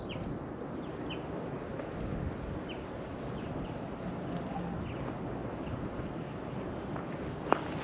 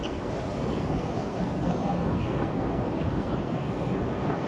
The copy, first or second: second